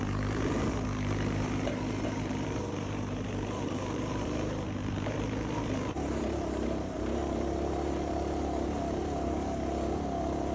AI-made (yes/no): yes